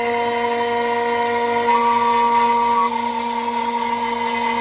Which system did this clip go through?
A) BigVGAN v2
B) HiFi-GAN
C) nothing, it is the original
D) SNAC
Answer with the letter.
C